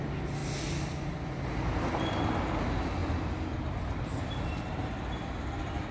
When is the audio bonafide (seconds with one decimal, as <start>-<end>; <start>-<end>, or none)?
0.0-5.9